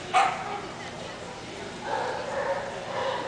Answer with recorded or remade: recorded